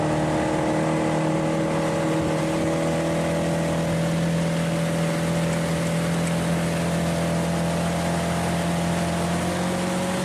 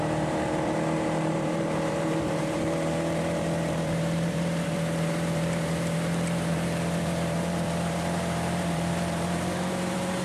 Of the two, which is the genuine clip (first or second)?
first